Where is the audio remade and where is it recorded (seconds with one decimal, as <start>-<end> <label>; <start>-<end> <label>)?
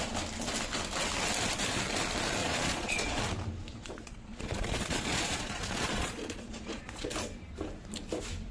0.0-2.4 recorded; 2.4-3.2 remade; 3.2-3.7 recorded; 3.7-7.1 remade; 7.1-8.5 recorded